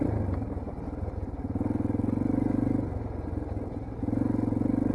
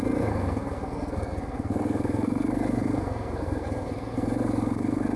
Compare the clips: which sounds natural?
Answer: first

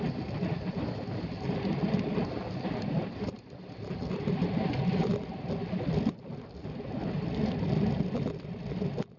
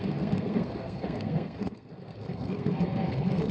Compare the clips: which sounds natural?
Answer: first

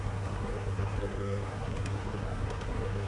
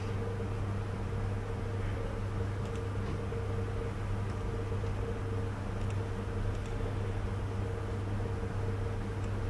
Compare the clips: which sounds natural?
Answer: second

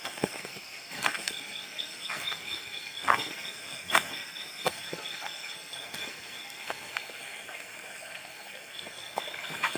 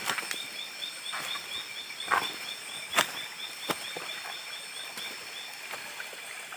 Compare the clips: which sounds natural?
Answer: second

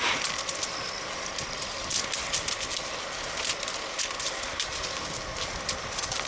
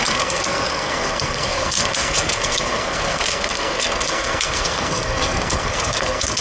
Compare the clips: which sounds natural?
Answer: first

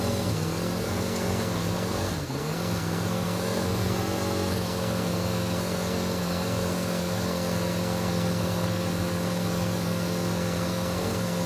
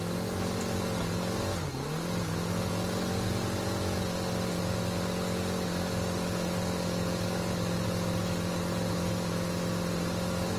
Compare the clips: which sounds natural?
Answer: second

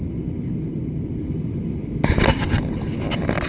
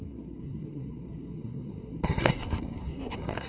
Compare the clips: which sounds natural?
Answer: first